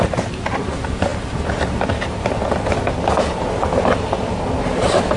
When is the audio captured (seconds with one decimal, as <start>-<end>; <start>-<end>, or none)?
0.0-5.2